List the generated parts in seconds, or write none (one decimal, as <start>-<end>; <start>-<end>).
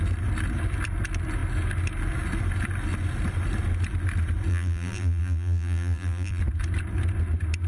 4.5-6.4